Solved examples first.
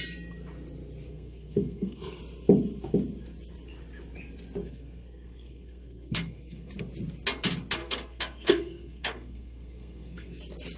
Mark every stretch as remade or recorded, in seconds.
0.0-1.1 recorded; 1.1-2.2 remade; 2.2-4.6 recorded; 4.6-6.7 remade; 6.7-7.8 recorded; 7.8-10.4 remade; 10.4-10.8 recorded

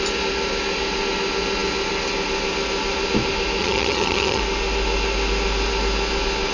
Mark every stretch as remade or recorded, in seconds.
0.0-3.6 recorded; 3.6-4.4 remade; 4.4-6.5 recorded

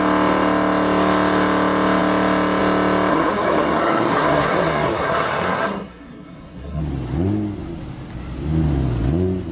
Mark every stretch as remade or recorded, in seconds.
0.0-3.1 recorded; 3.1-6.8 remade; 6.8-9.5 recorded